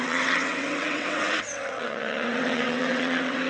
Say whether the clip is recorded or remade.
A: remade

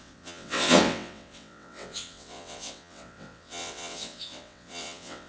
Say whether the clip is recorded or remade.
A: remade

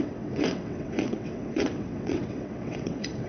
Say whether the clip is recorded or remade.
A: remade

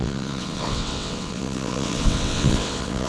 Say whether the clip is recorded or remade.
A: remade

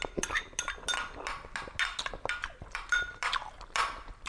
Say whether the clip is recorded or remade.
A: recorded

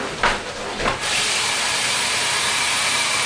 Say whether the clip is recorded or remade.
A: recorded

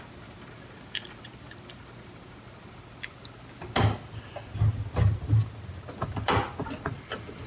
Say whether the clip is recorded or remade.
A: recorded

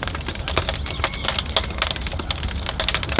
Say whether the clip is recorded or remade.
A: recorded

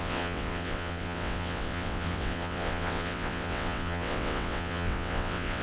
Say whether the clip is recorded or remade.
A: remade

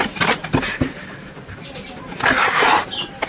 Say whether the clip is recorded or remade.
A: recorded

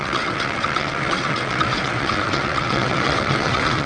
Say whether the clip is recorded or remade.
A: remade